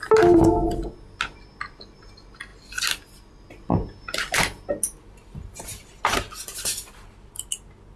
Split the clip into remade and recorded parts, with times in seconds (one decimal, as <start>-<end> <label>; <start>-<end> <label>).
0.0-8.0 recorded